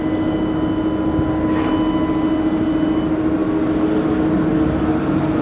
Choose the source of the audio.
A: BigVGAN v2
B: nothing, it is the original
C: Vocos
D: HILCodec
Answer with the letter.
B